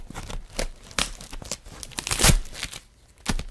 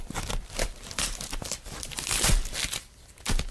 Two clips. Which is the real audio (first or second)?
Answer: first